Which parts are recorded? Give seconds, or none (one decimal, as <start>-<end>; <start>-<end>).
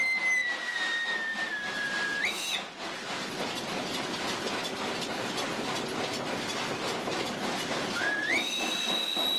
0.0-9.4